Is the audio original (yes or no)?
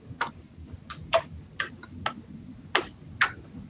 yes